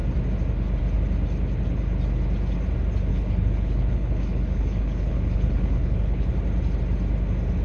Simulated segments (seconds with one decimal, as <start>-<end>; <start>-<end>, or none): 3.1-6.3